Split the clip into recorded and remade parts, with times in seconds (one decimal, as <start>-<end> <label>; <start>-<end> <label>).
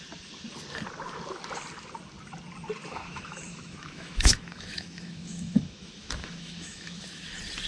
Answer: 0.0-2.9 recorded; 2.9-7.3 remade; 7.3-7.7 recorded